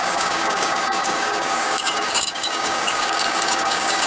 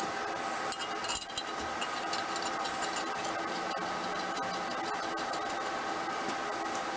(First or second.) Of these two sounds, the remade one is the first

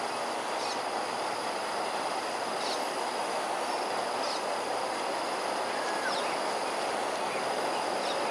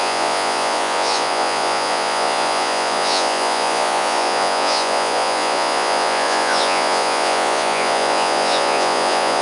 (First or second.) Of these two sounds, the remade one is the second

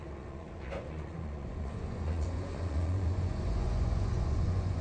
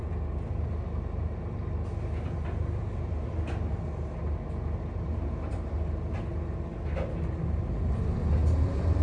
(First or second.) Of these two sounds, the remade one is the first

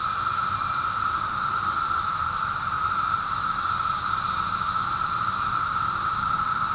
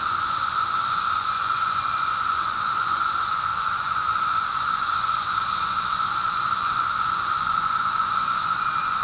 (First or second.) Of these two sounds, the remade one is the second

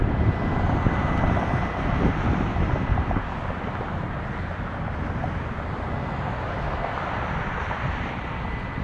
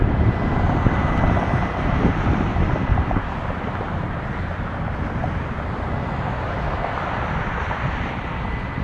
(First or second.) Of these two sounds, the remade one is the second